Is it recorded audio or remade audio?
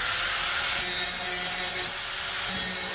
recorded